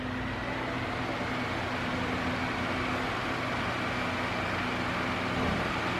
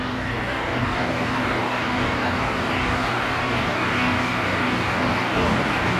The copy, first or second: second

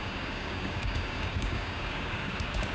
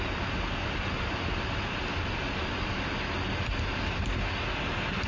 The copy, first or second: first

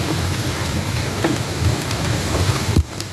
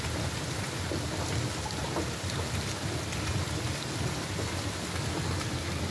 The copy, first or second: first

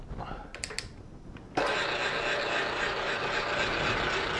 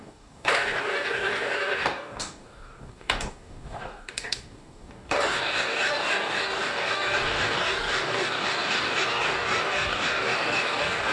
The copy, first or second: second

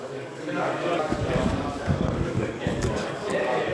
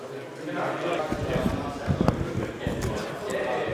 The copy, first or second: first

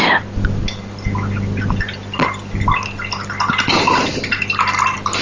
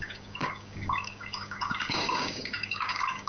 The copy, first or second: second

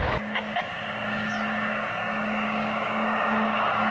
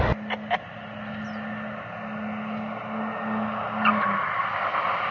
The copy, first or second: first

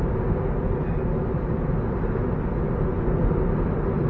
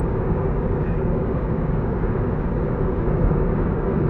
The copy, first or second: second